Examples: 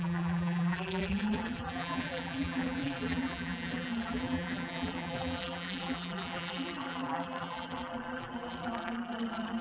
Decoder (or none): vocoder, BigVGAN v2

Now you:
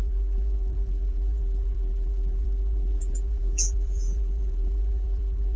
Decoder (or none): vocoder, BigVGAN v2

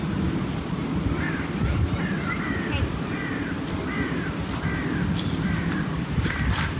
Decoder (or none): vocoder, BigVGAN v2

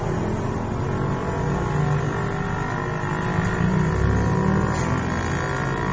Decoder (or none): none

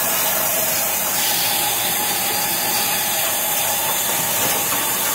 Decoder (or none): vocoder, BigVGAN v2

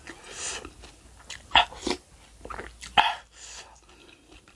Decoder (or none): none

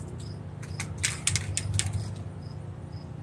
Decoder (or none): none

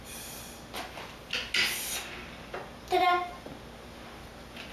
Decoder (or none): none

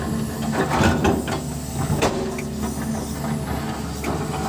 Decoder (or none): none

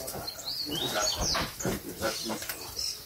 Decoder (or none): vocoder, BigVGAN v2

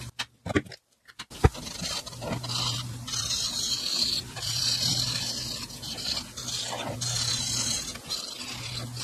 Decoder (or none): none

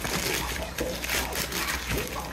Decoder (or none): none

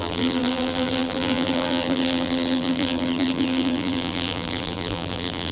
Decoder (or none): vocoder, BigVGAN v2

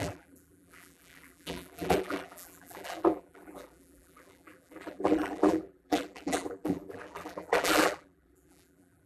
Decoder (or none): vocoder, BigVGAN v2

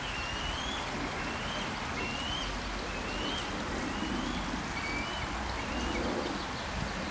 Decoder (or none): none